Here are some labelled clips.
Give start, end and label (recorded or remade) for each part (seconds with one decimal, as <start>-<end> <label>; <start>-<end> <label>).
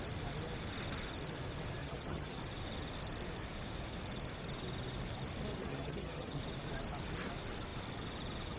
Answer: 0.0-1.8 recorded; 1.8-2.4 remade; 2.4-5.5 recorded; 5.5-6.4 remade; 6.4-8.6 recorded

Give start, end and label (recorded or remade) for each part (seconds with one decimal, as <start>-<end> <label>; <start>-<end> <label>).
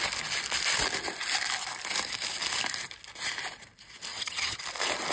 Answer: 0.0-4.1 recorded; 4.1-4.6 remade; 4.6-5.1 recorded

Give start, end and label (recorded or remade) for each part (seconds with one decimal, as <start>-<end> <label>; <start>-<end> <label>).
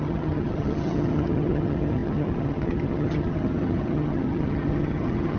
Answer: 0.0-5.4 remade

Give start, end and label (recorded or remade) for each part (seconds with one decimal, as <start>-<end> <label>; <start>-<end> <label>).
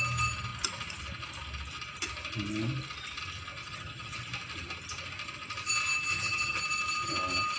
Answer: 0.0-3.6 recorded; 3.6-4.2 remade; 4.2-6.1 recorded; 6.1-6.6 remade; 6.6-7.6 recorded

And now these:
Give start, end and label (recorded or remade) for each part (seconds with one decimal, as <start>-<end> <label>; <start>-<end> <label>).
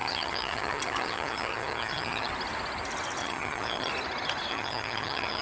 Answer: 0.0-2.3 remade; 2.3-3.2 recorded; 3.2-3.9 remade; 3.9-4.5 recorded; 4.5-5.4 remade